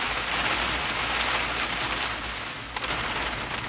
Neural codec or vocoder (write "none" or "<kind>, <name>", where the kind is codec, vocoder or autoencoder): none